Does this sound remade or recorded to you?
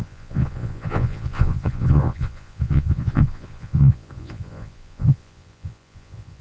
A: remade